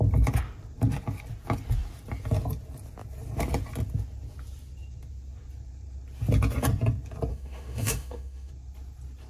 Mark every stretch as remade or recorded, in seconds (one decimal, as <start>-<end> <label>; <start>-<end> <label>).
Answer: 0.0-7.3 recorded; 7.3-8.5 remade; 8.5-9.3 recorded